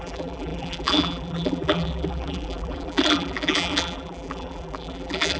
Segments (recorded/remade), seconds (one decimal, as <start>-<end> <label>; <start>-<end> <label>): 0.0-5.4 remade